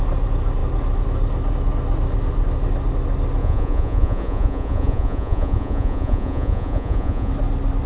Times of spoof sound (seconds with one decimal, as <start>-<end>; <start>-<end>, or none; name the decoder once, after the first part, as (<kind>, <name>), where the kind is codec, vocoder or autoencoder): 3.4-7.3 (vocoder, Vocos)

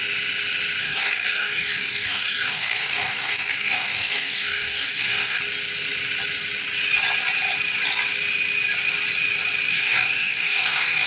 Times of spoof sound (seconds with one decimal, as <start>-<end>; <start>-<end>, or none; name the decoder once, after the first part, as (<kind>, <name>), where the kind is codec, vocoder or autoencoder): 0.8-5.4 (codec, DAC); 9.7-11.1

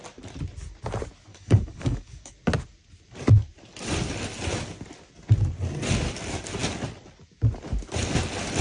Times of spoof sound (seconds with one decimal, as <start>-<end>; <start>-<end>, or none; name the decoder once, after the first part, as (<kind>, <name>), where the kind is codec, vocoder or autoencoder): 1.3-2.3 (codec, DAC)

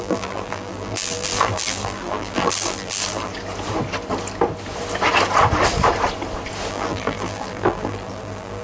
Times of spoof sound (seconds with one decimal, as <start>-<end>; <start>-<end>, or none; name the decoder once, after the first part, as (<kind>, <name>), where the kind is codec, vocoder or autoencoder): 0.0-3.3 (vocoder, BigVGAN v2); 6.7-8.6